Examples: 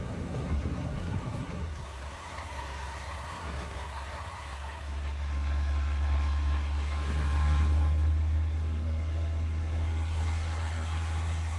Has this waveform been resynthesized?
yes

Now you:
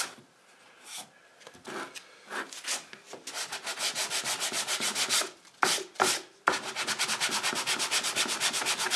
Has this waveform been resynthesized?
no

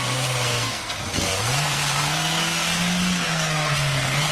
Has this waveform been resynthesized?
yes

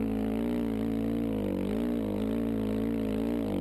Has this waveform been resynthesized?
no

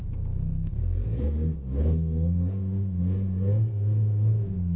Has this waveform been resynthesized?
yes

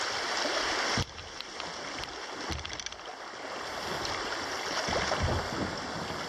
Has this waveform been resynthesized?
no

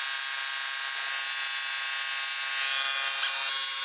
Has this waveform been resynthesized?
no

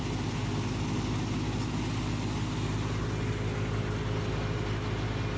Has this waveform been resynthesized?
no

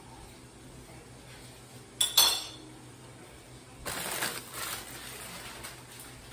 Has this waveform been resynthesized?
no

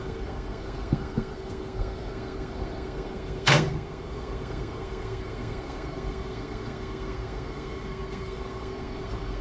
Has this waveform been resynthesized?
yes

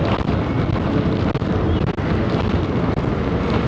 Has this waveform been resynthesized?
no